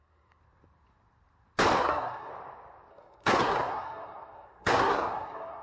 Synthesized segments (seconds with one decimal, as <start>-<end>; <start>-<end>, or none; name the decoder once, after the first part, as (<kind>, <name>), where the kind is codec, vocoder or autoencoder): 0.0-0.4 (codec, SNAC); 1.8-2.3; 2.9-5.6